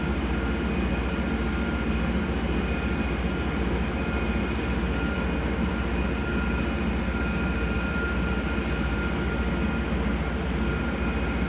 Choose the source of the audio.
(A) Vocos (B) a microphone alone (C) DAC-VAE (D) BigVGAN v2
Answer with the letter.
B